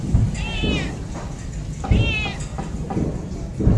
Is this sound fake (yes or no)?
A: no